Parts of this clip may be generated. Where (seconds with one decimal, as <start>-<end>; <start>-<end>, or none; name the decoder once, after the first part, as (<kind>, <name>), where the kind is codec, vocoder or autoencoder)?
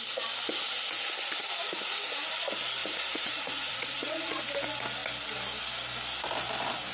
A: 2.8-4.4 (vocoder, Vocos)